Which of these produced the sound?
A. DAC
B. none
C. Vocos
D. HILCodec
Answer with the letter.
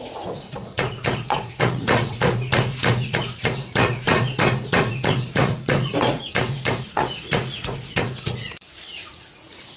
C